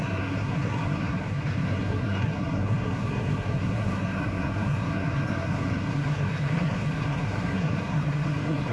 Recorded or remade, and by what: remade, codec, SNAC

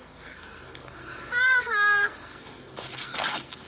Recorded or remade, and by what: remade, codec, SNAC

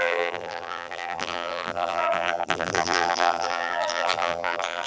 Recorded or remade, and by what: remade, vocoder, BigVGAN v2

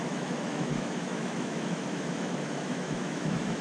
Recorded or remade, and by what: remade, autoencoder, DAC-VAE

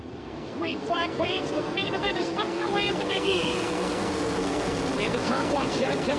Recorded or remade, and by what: remade, codec, SNAC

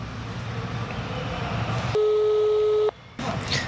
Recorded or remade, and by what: recorded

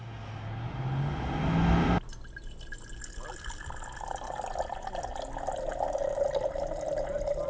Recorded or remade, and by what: recorded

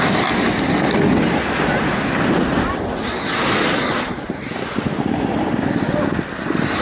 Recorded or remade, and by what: recorded